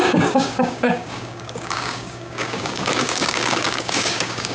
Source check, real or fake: fake